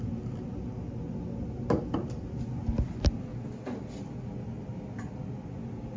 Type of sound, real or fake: real